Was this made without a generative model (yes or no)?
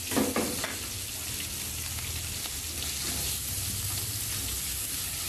yes